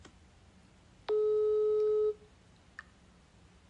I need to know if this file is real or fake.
real